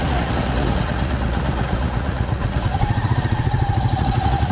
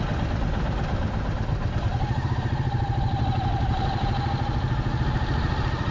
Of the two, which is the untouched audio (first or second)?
second